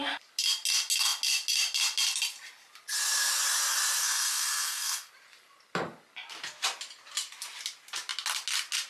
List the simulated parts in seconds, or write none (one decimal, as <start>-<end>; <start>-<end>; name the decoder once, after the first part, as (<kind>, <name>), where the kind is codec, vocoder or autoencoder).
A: 4.0-5.1 (codec, SNAC)